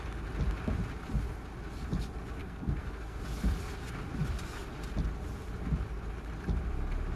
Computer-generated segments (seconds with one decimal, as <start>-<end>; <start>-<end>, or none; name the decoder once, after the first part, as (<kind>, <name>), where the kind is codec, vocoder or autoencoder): 2.4-3.2 (codec, SNAC)